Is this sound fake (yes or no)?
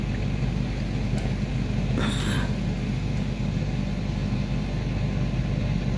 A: no